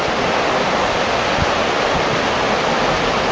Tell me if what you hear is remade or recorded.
recorded